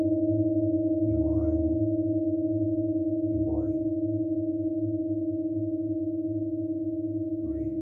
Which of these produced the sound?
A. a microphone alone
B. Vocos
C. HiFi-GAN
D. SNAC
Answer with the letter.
A